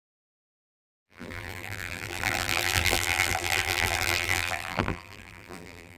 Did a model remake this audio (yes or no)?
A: yes